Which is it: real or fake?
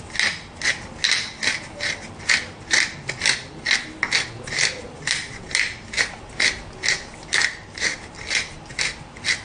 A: real